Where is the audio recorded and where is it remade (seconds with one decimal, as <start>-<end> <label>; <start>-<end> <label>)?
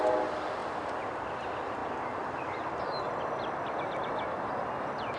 0.0-5.2 recorded